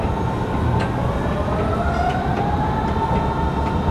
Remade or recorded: recorded